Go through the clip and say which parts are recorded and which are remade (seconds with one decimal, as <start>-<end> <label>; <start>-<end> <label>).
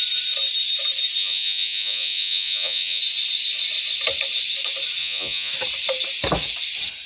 0.0-1.2 recorded; 1.2-3.0 remade; 3.0-5.0 recorded; 5.0-5.5 remade; 5.5-7.1 recorded